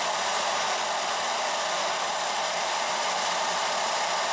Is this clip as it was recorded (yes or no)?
yes